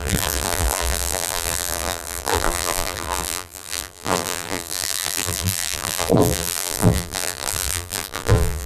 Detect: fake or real fake